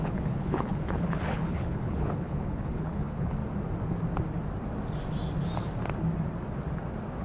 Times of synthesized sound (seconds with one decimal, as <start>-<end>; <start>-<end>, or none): 0.0-3.4

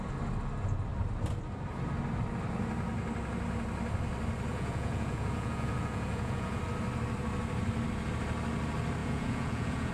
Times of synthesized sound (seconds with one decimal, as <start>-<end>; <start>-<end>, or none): 4.5-6.6; 9.0-9.9

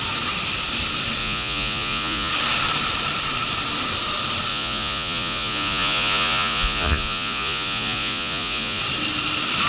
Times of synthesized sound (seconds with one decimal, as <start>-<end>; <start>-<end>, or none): 1.2-2.3; 4.5-8.8

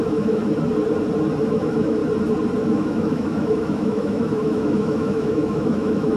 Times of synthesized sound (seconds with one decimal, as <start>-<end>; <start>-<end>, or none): 0.0-0.4; 1.5-2.0; 2.6-6.2

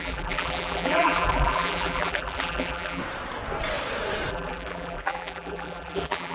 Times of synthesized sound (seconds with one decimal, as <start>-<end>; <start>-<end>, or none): 0.0-3.0; 4.3-6.3

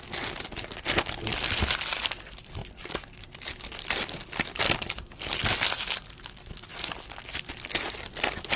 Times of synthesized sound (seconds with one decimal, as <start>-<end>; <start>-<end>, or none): 2.6-4.6